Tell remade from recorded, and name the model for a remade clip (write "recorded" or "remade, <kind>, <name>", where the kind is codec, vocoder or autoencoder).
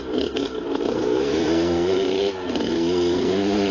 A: remade, codec, SNAC